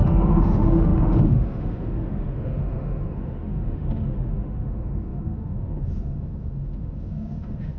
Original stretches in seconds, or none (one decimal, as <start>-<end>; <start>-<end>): none